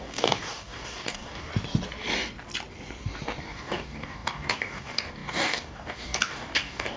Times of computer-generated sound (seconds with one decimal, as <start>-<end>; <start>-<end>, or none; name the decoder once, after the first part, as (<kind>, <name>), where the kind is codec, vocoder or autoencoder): 0.0-1.5 (codec, DAC); 3.4-7.0